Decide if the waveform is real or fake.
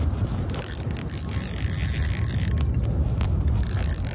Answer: real